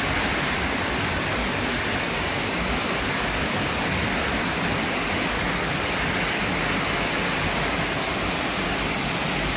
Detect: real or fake real